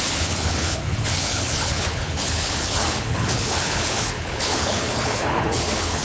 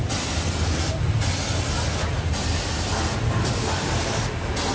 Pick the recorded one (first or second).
second